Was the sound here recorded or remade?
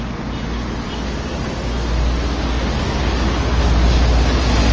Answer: recorded